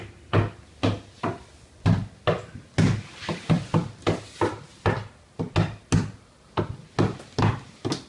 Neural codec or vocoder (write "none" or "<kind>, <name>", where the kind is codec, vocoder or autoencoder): none